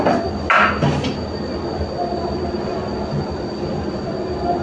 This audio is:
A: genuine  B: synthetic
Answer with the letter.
A